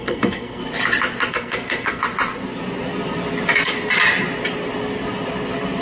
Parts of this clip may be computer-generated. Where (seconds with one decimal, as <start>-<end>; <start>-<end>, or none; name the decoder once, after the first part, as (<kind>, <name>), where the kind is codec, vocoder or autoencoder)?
0.0-0.6 (codec, SNAC); 1.3-2.0

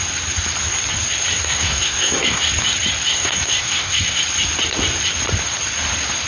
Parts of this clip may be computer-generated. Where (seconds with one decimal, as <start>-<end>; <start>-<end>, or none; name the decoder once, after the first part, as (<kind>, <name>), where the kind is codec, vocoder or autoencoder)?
1.3-2.4 (codec, SNAC); 3.1-4.2